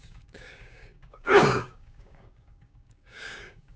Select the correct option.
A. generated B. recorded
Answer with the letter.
A